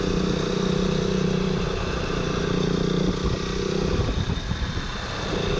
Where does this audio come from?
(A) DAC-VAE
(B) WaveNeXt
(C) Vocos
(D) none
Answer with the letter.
D